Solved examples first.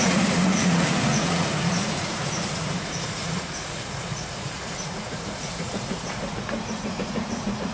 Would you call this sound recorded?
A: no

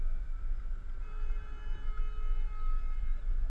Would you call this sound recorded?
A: yes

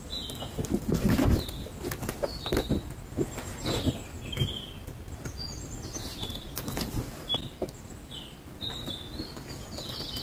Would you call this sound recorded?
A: yes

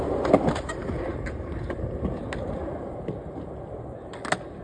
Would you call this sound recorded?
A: yes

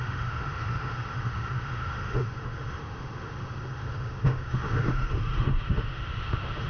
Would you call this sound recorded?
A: no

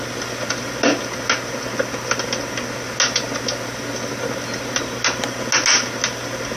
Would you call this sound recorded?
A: yes